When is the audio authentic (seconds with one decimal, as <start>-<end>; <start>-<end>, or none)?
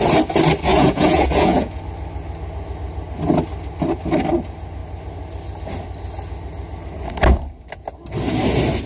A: 0.0-0.7; 1.8-8.9